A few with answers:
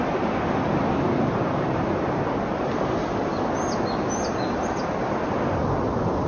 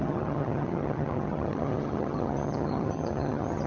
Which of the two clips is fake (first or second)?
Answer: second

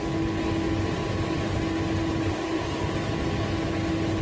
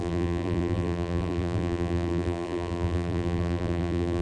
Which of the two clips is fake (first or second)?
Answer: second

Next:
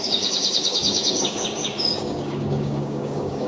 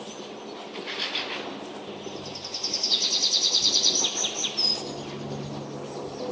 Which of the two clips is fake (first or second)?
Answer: first